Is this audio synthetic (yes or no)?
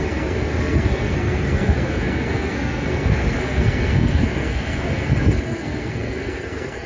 yes